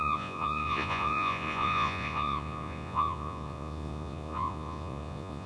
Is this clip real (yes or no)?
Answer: no